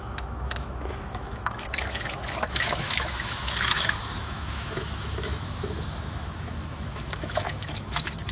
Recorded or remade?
remade